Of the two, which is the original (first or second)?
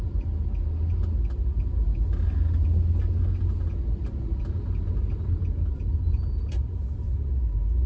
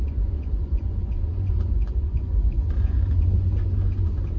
first